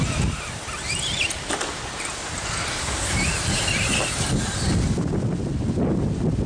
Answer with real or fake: real